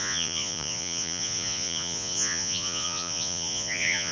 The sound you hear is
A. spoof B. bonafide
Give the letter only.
A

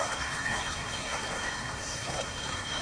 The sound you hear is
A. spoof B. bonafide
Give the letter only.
A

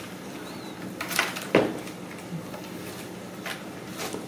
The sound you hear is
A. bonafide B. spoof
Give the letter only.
A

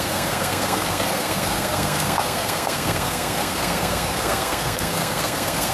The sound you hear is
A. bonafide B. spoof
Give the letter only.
B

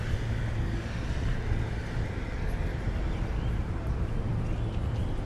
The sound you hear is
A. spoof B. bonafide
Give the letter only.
B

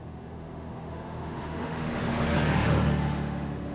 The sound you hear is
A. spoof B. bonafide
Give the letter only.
A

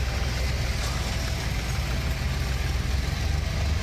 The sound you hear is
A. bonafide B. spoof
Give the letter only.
A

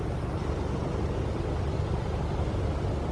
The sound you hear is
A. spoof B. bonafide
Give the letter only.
B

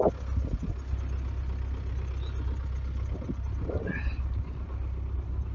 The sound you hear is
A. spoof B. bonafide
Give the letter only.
B